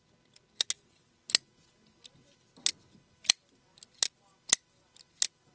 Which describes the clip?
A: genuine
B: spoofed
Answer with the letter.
A